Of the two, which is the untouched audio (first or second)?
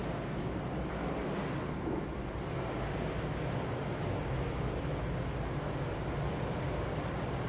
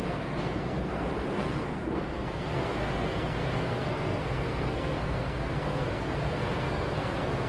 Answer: first